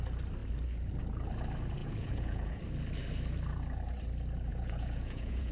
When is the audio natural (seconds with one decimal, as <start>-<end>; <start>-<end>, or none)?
0.0-1.8; 2.6-4.5

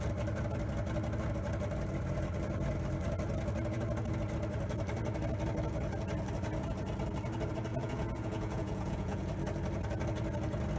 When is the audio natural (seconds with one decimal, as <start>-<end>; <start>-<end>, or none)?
0.0-7.7; 9.3-10.8

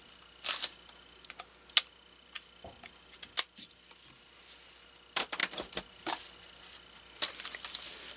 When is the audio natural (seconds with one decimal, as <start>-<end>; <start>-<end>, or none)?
0.0-8.2

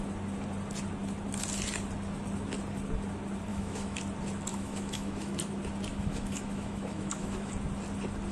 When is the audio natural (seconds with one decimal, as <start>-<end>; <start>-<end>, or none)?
0.0-3.5; 4.0-4.5; 5.4-5.9; 7.5-8.3

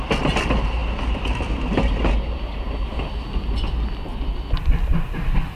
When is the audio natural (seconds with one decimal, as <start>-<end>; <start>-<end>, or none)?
0.0-4.1; 4.9-5.6